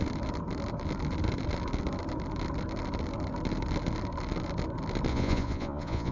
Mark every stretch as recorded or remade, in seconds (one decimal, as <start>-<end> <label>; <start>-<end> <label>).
0.0-5.1 recorded; 5.1-6.1 remade